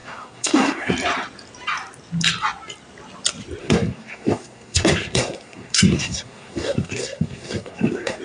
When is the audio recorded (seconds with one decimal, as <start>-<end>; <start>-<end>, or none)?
0.9-3.6